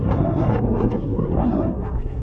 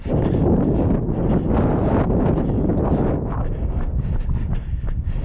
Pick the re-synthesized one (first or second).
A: first